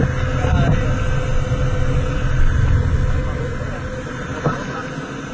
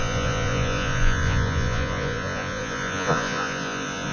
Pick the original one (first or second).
first